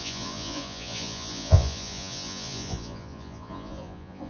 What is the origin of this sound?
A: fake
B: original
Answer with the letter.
A